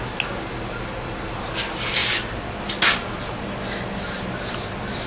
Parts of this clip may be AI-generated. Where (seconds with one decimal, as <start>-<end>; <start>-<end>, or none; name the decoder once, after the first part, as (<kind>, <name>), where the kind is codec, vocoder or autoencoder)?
none